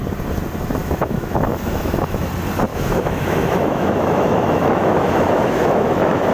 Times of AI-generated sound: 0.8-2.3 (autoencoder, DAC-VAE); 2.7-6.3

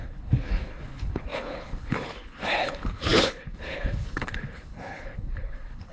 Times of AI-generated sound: 0.0-5.9 (codec, HILCodec)

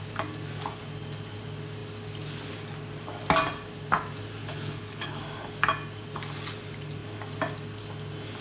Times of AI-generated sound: 4.4-5.2 (codec, HILCodec)

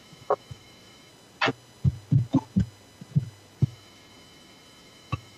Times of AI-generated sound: 0.0-1.1 (autoencoder, DAC-VAE); 3.6-5.4